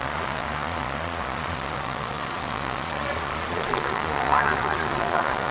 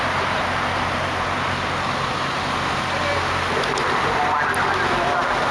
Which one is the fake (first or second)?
first